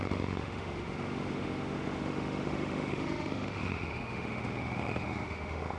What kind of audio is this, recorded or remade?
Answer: remade